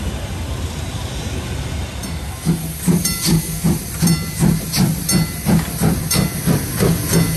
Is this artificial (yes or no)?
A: no